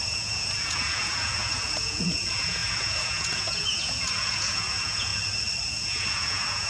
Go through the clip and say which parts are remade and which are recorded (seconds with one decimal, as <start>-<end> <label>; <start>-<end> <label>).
0.0-5.1 remade; 5.1-5.7 recorded; 5.7-6.7 remade